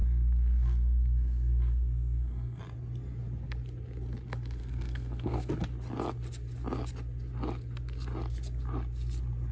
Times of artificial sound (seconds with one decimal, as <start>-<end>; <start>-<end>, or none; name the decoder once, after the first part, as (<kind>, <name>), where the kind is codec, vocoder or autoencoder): 0.0-2.6 (codec, SNAC); 4.6-5.5